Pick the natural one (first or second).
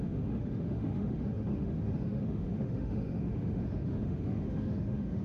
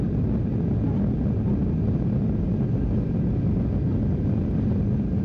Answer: second